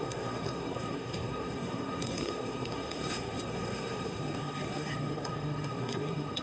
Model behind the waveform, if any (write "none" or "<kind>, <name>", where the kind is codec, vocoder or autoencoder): codec, SNAC